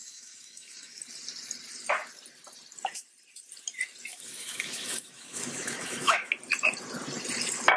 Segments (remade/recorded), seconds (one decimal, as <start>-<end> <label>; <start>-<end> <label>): 0.0-1.0 remade; 1.0-4.1 recorded; 4.1-6.3 remade; 6.3-7.8 recorded